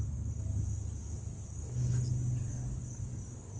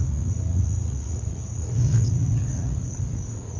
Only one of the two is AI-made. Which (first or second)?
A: second